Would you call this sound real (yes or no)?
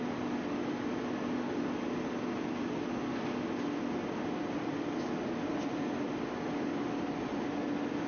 yes